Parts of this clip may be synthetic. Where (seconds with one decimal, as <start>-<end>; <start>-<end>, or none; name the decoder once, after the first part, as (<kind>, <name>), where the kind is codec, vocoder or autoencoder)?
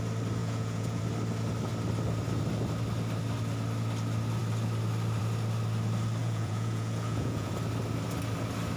0.4-1.0 (vocoder, Vocos); 6.2-7.5